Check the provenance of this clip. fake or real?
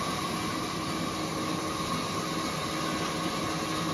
real